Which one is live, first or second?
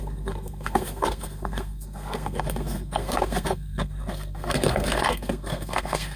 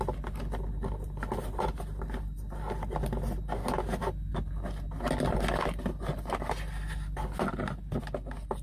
second